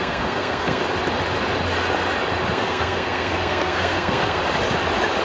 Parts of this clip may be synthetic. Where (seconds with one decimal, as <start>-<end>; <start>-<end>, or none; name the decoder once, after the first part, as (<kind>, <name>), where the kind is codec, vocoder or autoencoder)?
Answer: 0.0-0.8 (codec, SNAC); 2.5-4.4